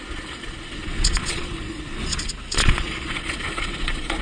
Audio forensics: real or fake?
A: fake